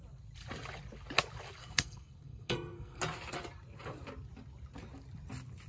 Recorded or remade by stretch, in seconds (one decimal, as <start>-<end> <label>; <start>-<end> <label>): 0.0-1.6 recorded; 1.6-3.0 remade; 3.0-5.7 recorded